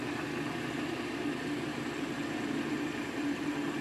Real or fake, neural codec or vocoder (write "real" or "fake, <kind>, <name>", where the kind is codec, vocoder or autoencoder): fake, vocoder, BigVGAN v2